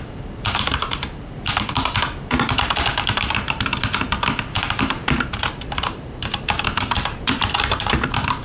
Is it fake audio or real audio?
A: fake